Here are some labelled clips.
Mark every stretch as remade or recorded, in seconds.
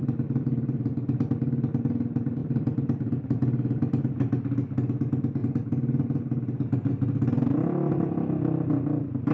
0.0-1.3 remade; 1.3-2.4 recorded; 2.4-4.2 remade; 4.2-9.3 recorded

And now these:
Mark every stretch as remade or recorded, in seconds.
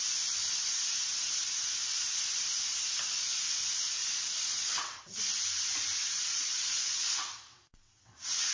0.0-4.0 recorded; 4.0-5.2 remade; 5.2-6.3 recorded; 6.3-8.5 remade